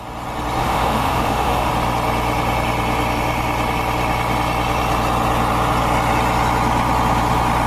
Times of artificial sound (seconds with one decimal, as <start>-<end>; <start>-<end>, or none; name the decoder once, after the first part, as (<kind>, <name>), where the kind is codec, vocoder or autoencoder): 0.6-1.7 (autoencoder, DAC-VAE)

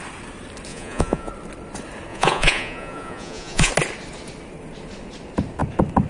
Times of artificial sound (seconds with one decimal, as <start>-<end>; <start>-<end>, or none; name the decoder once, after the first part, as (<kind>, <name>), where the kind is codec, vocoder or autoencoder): 0.7-1.3 (vocoder, Vocos); 2.1-3.7

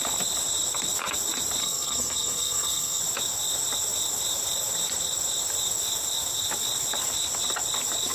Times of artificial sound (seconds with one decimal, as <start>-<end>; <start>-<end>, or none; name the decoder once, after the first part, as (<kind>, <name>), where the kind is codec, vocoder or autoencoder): 1.6-3.0 (codec, SNAC)

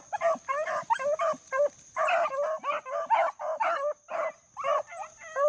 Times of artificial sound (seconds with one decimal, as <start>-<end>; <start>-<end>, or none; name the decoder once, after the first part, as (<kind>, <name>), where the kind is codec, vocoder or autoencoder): none

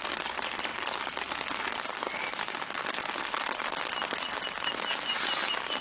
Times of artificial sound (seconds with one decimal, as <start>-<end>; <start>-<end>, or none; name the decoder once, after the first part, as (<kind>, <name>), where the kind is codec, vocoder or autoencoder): none

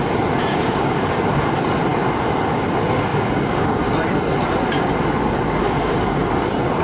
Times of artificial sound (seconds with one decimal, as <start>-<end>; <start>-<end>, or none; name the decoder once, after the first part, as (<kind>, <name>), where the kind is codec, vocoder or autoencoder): 0.5-1.0 (codec, DAC); 3.1-3.8; 5.6-6.2